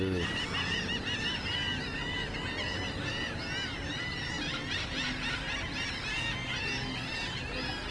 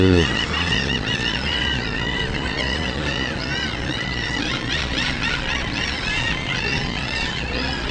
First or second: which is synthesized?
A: second